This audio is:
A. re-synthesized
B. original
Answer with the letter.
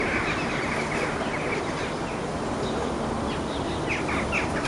B